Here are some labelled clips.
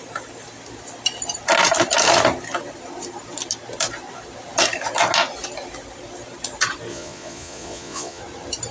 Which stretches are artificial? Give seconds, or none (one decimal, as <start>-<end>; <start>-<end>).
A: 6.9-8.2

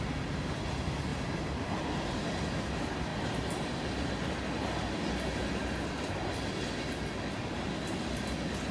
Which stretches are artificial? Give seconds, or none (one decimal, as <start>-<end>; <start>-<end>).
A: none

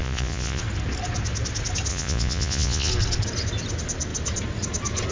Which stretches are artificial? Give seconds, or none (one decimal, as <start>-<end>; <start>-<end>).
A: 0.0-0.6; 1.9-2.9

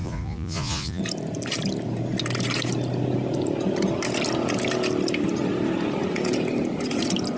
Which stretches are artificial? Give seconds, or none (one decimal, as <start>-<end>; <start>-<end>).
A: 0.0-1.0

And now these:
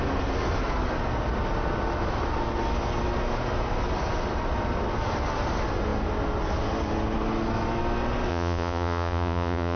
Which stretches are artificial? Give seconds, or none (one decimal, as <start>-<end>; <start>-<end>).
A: 8.3-9.8

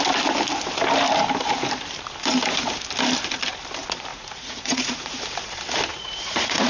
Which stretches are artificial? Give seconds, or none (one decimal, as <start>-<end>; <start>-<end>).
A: 4.1-5.2; 5.9-6.7

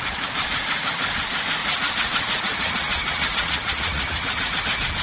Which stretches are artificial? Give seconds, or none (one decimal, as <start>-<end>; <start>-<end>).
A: 1.6-4.6

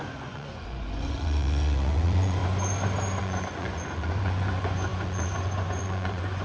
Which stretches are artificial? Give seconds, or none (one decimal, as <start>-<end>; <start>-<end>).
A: 0.0-2.4; 3.2-6.4